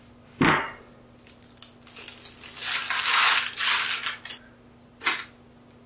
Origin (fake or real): real